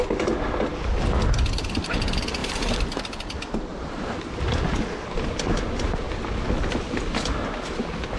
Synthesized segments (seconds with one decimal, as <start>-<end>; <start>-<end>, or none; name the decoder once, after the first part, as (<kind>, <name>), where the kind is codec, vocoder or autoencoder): 2.4-3.0 (vocoder, BigVGAN v2); 3.7-4.3